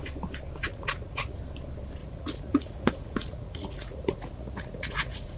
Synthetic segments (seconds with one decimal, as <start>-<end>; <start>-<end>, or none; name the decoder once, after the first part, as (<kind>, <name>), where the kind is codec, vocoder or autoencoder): 0.6-1.4 (vocoder, Vocos); 2.0-5.4